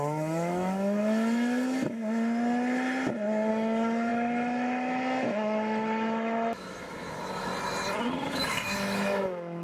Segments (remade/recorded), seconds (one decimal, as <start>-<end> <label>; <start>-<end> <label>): 0.0-2.0 remade; 2.0-3.5 recorded; 3.5-7.5 remade; 7.5-8.3 recorded; 8.3-9.6 remade